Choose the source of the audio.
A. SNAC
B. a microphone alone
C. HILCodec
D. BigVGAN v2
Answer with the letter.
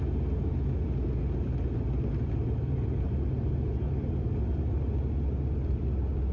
B